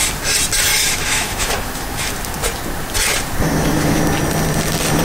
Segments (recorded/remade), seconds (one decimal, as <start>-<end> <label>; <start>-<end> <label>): 0.0-0.7 recorded; 0.7-2.1 remade; 2.1-3.4 recorded; 3.4-4.0 remade; 4.0-5.0 recorded